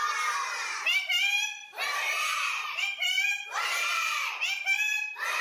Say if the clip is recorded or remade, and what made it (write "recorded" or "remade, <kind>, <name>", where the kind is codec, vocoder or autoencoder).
remade, vocoder, BigVGAN v2